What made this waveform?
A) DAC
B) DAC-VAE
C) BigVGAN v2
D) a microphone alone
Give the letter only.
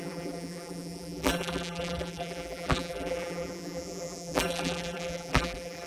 C